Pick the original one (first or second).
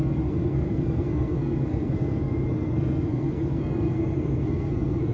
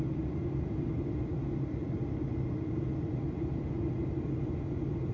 second